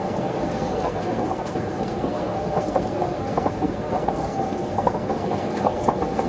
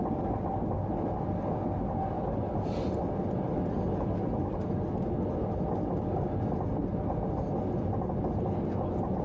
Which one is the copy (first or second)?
first